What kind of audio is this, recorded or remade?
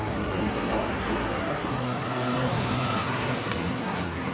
remade